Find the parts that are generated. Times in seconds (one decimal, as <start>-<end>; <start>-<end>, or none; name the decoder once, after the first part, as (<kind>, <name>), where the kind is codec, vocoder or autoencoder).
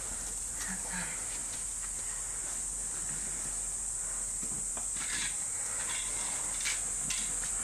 none